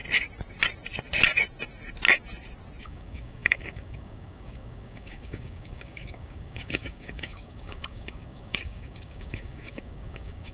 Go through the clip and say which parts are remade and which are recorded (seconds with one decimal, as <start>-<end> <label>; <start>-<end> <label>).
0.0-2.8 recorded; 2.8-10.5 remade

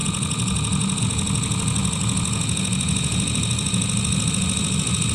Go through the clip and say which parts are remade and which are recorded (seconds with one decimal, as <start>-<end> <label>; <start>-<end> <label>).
0.0-5.1 remade

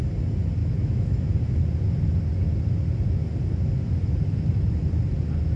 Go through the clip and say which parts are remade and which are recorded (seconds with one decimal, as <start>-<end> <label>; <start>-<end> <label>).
0.0-0.6 recorded; 0.6-1.3 remade; 1.3-5.6 recorded

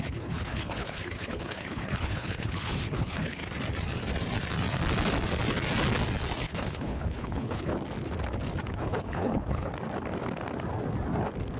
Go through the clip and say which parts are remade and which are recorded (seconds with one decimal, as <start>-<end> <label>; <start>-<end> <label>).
0.0-3.4 remade; 3.4-6.4 recorded; 6.4-7.7 remade; 7.7-8.8 recorded; 8.8-9.7 remade; 9.7-11.6 recorded

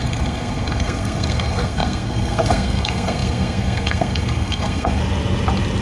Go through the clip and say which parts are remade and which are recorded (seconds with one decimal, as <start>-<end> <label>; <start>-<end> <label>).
0.0-5.0 remade; 5.0-5.8 recorded

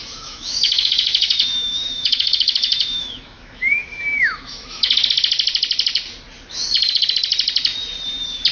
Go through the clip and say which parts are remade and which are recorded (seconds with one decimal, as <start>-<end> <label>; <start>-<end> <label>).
0.0-4.9 remade; 4.9-8.5 recorded

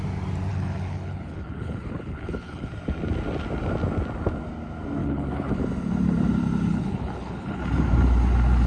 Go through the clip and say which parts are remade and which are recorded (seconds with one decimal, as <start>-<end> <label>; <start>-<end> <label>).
0.0-0.5 recorded; 0.5-2.7 remade; 2.7-5.0 recorded; 5.0-5.6 remade; 5.6-6.7 recorded; 6.7-7.6 remade; 7.6-8.7 recorded

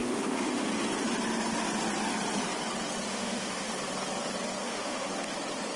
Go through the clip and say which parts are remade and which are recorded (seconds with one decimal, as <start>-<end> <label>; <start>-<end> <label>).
0.0-0.7 remade; 0.7-3.1 recorded; 3.1-3.7 remade; 3.7-4.6 recorded; 4.6-5.1 remade; 5.1-5.8 recorded